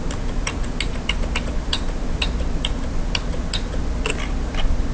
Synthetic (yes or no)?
no